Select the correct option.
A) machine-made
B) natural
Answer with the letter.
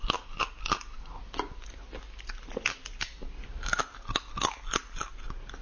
B